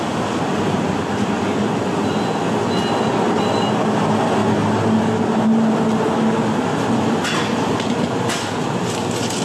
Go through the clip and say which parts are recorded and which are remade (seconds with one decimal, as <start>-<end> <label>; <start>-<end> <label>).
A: 0.0-9.4 recorded